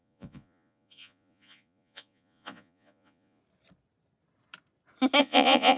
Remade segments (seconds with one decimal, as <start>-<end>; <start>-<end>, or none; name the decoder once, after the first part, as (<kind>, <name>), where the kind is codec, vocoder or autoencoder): 0.0-3.4 (vocoder, Vocos); 5.2-5.8